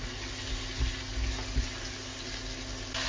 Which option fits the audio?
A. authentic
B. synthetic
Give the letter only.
A